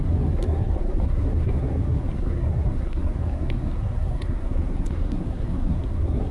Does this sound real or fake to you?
fake